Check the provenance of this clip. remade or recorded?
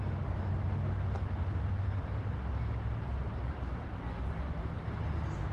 recorded